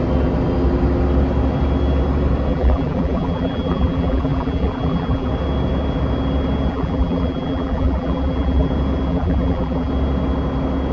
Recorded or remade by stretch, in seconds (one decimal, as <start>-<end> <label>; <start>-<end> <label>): 0.0-2.5 recorded; 2.5-5.3 remade; 5.3-6.7 recorded; 6.7-8.7 remade; 8.7-9.1 recorded; 9.1-9.9 remade; 9.9-10.9 recorded